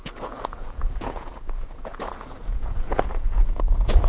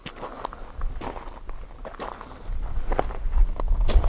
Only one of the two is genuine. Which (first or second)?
second